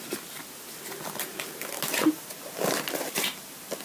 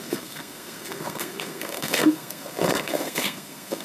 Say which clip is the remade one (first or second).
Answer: second